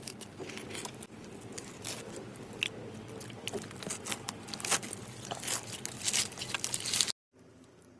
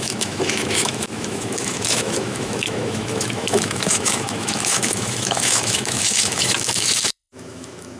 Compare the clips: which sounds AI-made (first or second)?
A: second